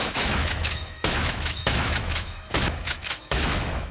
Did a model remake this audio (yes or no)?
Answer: yes